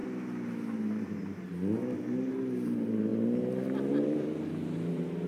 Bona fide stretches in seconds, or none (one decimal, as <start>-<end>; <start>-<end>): 0.0-2.3; 3.1-3.9